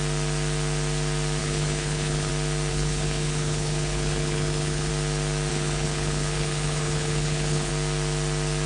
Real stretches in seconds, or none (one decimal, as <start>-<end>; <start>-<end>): 0.0-1.4; 2.3-2.7; 4.9-5.5; 7.7-8.7